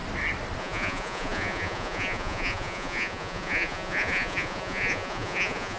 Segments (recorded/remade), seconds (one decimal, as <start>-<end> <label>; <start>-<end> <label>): 0.0-0.6 recorded; 0.6-5.8 remade